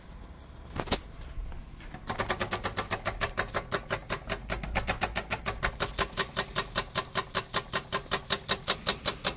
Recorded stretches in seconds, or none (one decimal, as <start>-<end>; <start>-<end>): 0.0-9.4